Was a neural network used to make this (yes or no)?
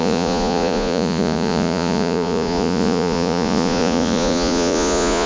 yes